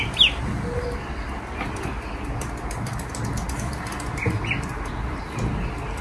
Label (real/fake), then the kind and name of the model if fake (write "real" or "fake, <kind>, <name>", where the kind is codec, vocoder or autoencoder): real